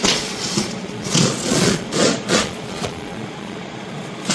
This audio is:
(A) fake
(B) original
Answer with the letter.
A